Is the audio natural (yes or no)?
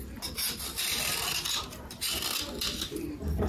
yes